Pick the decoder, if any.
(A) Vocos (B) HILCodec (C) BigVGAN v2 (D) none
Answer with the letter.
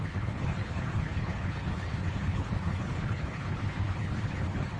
B